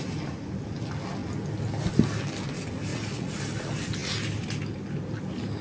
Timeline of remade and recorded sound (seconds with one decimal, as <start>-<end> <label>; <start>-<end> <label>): 0.0-2.9 recorded; 2.9-3.4 remade; 3.4-5.6 recorded